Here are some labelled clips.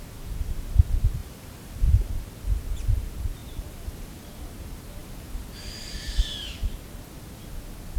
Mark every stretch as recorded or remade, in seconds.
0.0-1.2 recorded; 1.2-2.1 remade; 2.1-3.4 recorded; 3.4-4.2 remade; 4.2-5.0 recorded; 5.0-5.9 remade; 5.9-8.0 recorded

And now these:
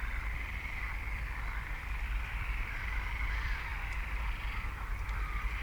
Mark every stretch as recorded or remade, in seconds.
0.0-5.6 remade

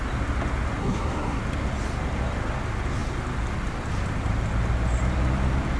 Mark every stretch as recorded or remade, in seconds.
0.0-0.8 recorded; 0.8-1.4 remade; 1.4-5.8 recorded